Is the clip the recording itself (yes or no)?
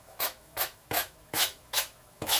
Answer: no